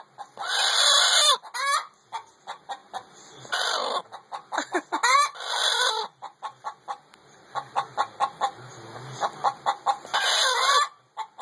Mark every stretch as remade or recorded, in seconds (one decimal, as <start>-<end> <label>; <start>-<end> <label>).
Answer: 0.0-11.4 recorded